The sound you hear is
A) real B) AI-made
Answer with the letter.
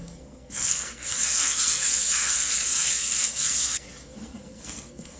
B